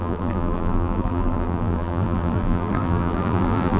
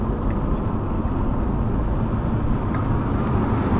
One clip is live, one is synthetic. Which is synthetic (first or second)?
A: first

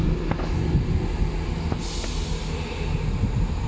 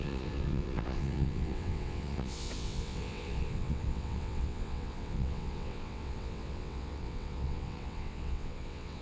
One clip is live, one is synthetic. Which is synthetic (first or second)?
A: second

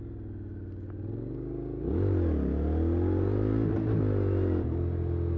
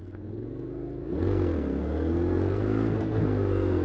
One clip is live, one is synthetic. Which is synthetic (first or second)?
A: second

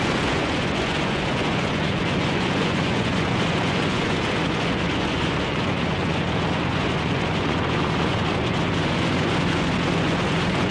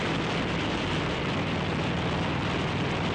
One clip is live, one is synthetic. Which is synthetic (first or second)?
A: first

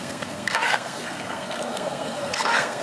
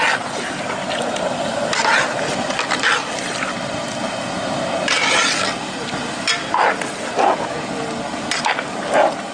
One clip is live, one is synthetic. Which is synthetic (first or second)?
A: first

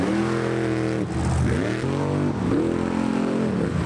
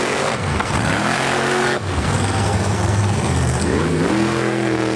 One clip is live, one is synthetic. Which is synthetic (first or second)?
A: second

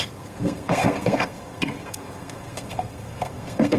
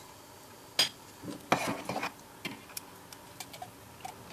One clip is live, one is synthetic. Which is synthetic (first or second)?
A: first